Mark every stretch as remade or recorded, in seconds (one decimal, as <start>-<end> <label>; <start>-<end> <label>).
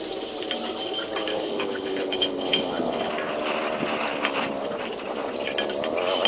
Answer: 0.0-1.3 recorded; 1.3-3.1 remade; 3.1-6.3 recorded